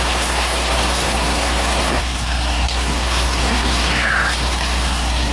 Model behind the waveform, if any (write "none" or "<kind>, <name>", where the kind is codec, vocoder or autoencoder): codec, SNAC